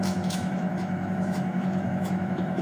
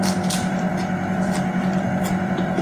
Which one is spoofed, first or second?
first